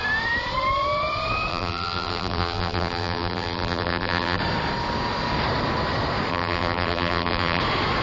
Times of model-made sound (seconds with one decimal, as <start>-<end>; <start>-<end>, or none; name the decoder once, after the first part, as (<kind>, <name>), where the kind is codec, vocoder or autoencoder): 1.5-4.4 (vocoder, BigVGAN v2); 6.3-7.6